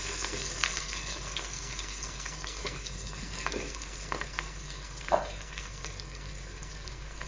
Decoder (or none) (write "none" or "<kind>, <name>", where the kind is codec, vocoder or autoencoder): codec, SNAC